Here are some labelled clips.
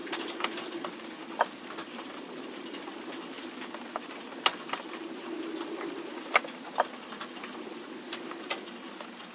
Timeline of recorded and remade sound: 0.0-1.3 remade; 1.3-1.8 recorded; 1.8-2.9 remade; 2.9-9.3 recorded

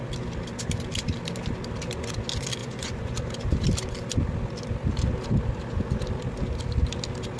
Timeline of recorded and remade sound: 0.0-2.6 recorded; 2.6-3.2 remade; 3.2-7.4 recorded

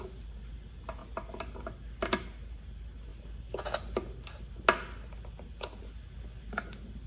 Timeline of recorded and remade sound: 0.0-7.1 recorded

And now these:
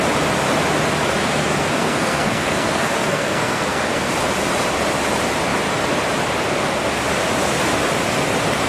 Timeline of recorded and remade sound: 0.0-1.2 recorded; 1.2-4.1 remade; 4.1-8.7 recorded

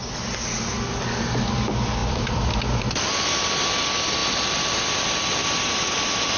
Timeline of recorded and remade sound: 0.0-2.0 recorded; 2.0-2.5 remade; 2.5-6.4 recorded

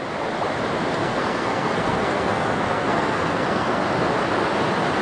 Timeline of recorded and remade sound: 0.0-1.0 recorded; 1.0-3.8 remade; 3.8-5.0 recorded

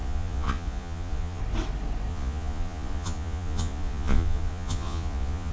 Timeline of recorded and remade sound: 0.0-1.4 remade; 1.4-2.1 recorded; 2.1-5.5 remade

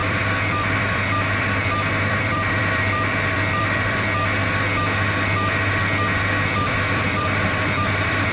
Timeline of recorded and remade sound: 0.0-4.4 remade; 4.4-6.2 recorded; 6.2-8.3 remade